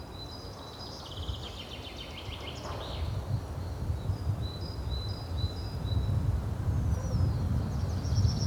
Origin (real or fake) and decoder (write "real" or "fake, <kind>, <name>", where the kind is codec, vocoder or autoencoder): real